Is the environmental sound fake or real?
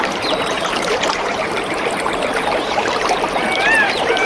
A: fake